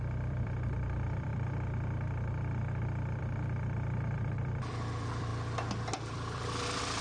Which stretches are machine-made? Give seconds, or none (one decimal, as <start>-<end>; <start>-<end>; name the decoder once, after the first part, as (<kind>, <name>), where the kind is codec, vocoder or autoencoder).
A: 0.0-5.3 (vocoder, BigVGAN v2); 6.1-7.0